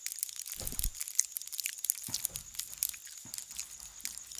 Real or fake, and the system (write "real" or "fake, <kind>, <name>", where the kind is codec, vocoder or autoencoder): real